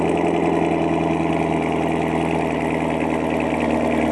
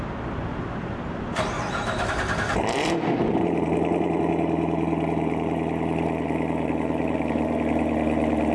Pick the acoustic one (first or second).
first